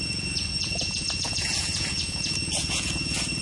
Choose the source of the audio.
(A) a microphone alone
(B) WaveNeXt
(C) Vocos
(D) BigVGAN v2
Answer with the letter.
C